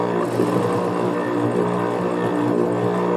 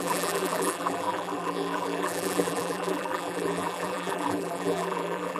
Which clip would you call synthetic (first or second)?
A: second